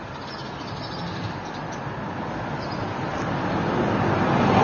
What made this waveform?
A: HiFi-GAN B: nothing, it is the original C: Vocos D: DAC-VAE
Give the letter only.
B